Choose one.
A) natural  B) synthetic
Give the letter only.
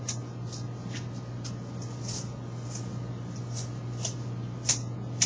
A